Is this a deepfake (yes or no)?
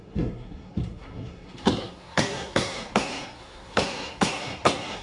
yes